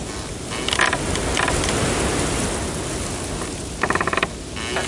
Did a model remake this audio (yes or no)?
no